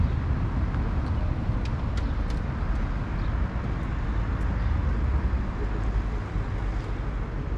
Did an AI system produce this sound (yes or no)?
no